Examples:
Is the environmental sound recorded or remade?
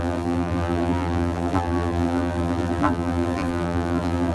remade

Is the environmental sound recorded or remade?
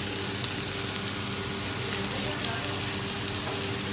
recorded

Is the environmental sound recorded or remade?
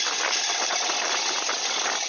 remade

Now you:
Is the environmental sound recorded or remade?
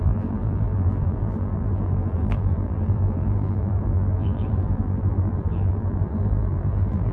remade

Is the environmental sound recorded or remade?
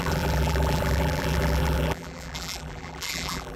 remade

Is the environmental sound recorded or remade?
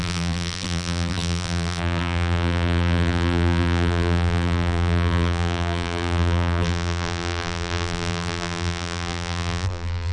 remade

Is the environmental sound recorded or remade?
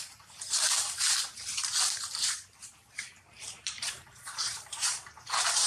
remade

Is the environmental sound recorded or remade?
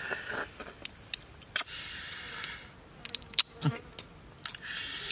recorded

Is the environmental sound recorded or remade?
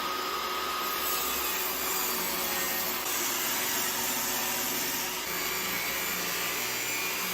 recorded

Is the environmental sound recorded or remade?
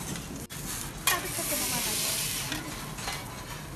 recorded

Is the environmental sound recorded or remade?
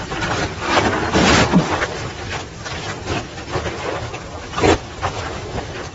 recorded